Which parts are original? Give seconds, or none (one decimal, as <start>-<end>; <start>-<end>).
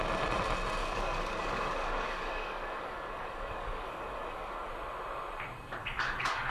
0.0-0.8; 4.7-5.8